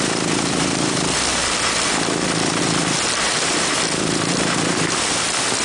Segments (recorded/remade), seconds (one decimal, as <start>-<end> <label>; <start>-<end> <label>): 0.0-5.6 recorded